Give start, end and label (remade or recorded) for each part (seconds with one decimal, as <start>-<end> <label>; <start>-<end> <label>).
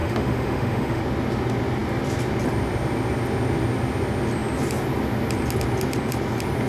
0.0-1.0 remade; 1.0-6.7 recorded